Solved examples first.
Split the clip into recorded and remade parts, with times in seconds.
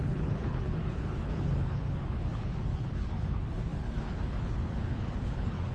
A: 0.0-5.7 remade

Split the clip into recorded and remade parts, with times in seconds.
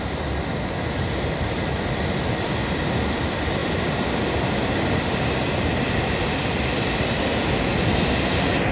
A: 0.0-3.6 remade; 3.6-4.9 recorded; 4.9-8.7 remade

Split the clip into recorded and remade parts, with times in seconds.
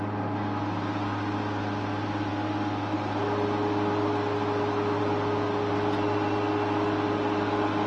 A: 0.0-7.9 recorded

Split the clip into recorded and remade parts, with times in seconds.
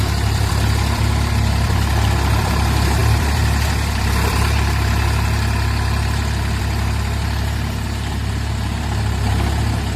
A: 0.0-10.0 remade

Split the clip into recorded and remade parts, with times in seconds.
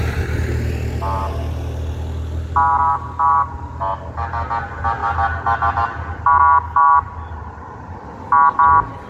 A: 0.0-9.1 recorded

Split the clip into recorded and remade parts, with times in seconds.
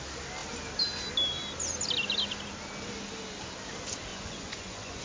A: 0.0-4.1 recorded; 4.1-5.0 remade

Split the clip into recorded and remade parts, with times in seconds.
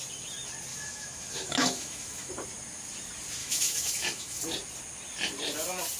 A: 0.0-0.7 recorded; 0.7-2.3 remade; 2.3-3.4 recorded; 3.4-4.4 remade; 4.4-6.0 recorded